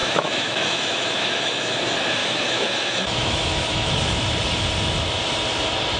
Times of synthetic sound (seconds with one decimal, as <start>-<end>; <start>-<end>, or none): 0.0-1.8; 2.2-3.9

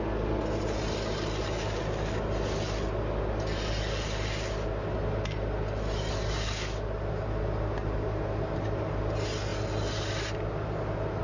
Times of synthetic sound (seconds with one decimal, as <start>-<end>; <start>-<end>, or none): none

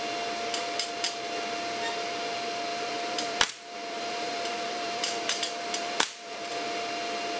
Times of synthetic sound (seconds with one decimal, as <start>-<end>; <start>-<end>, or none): 2.7-6.5

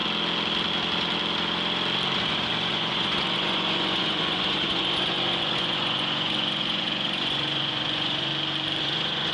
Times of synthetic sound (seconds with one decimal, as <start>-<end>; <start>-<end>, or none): 2.2-8.3; 8.8-9.3

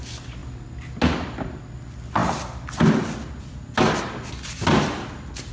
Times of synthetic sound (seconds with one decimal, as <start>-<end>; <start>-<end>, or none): none